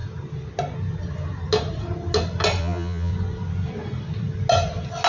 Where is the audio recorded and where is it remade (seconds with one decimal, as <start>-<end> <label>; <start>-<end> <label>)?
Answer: 0.0-2.6 recorded; 2.6-3.1 remade; 3.1-5.1 recorded